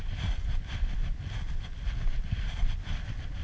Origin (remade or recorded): remade